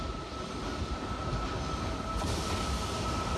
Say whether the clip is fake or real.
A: real